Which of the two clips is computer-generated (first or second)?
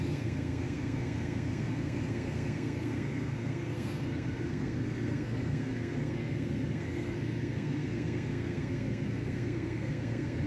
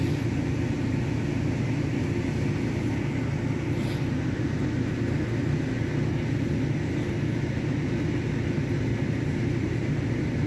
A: first